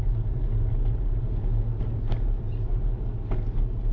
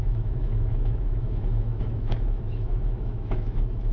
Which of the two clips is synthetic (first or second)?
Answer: second